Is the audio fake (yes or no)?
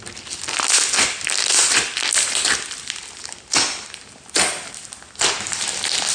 no